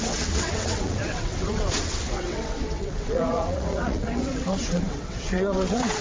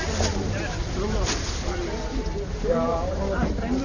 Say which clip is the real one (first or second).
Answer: second